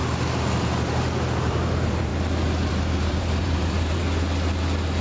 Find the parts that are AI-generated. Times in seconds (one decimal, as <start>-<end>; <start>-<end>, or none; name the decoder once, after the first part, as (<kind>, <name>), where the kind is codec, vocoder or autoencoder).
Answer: 1.4-2.1 (vocoder, BigVGAN v2); 2.7-4.0